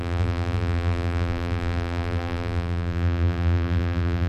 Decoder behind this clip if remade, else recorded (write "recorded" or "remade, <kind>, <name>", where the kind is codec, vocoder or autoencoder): remade, vocoder, BigVGAN v2